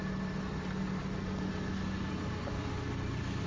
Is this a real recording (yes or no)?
yes